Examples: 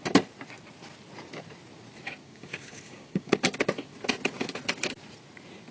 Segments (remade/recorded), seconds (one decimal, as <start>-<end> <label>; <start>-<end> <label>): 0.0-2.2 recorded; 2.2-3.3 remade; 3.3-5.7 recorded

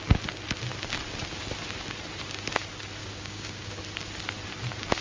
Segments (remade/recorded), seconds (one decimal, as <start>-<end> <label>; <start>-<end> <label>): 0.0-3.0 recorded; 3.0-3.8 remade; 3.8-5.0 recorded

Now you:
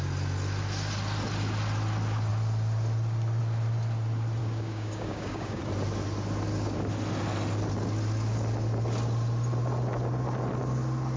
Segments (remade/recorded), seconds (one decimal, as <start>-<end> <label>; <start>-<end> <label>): 0.0-4.4 recorded; 4.4-5.6 remade; 5.6-11.2 recorded

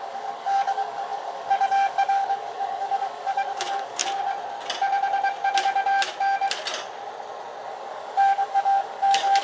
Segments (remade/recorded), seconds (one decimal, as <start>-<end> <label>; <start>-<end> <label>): 0.0-4.0 remade; 4.0-7.7 recorded; 7.7-9.4 remade

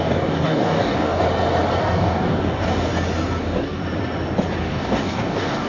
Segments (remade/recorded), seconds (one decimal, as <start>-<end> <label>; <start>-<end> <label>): 0.0-1.2 remade; 1.2-1.8 recorded; 1.8-2.9 remade; 2.9-3.4 recorded; 3.4-3.8 remade; 3.8-4.6 recorded; 4.6-5.7 remade

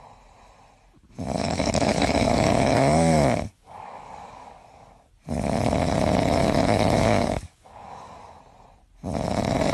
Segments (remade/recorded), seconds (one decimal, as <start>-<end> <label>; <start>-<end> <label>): 0.0-1.4 recorded; 1.4-5.1 remade; 5.1-6.4 recorded; 6.4-8.4 remade; 8.4-9.7 recorded